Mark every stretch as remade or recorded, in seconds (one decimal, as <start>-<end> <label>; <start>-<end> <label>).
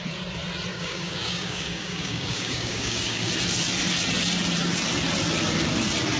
0.0-0.7 recorded; 0.7-3.3 remade; 3.3-6.2 recorded